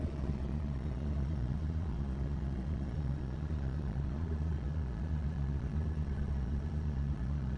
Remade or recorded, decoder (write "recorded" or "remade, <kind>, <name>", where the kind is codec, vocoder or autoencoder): remade, vocoder, Vocos